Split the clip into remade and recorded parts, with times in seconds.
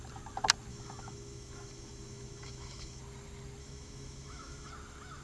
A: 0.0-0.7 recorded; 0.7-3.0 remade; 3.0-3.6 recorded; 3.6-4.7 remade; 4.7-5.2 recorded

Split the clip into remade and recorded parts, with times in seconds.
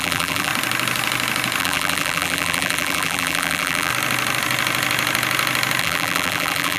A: 0.0-0.5 remade; 0.5-1.6 recorded; 1.6-3.9 remade; 3.9-5.8 recorded; 5.8-6.8 remade